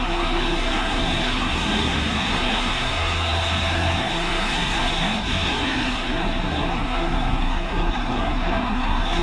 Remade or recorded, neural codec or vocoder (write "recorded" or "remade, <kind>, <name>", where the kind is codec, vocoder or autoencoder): remade, codec, SNAC